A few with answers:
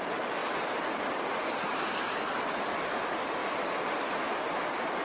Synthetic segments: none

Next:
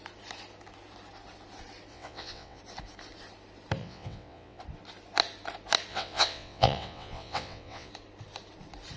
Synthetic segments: 1.9-2.6 (vocoder, WaveNeXt); 3.8-4.6; 5.9-7.9

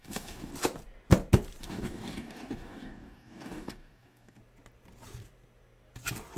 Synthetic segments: 0.0-0.5 (codec, DAC); 1.6-4.4